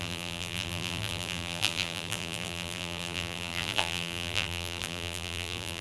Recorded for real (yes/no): no